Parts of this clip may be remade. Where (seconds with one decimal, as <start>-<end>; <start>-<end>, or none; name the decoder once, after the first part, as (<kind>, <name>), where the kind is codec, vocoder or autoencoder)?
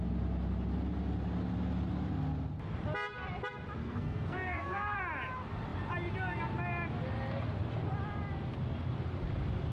3.8-5.0 (codec, SNAC)